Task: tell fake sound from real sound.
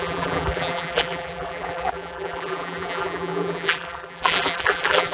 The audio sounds fake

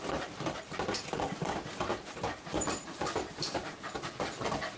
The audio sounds fake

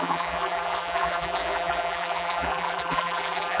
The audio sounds fake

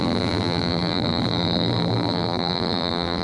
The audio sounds fake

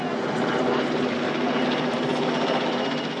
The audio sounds real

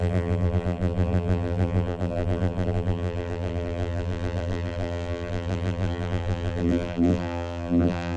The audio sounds fake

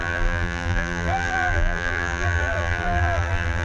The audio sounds fake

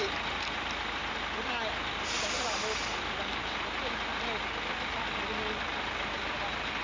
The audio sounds real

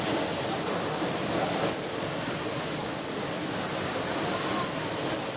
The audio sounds fake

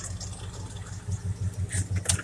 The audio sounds real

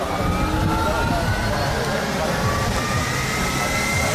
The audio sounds real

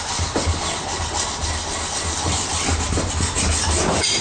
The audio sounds real